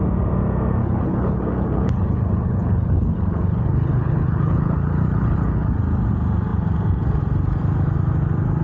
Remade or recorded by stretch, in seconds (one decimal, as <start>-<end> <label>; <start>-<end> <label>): 0.0-0.8 recorded; 0.8-5.8 remade; 5.8-8.6 recorded